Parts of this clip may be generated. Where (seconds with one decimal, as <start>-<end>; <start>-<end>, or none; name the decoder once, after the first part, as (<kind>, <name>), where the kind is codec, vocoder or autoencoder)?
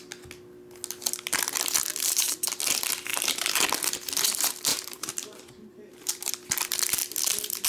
1.8-2.3 (vocoder, BigVGAN v2); 3.1-3.7; 4.7-6.3